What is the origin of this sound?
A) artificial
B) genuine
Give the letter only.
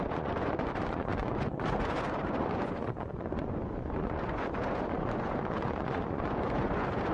A